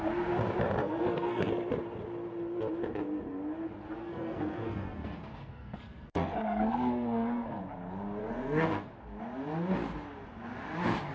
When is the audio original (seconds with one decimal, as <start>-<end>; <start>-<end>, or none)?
0.0-0.8; 1.5-4.0; 7.6-8.2; 8.9-11.1